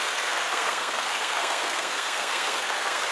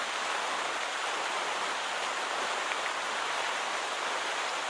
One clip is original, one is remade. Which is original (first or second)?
second